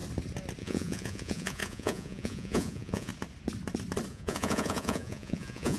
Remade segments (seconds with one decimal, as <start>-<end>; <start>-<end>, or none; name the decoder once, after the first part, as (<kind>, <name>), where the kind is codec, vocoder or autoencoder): 0.6-3.1 (vocoder, Vocos); 4.1-5.8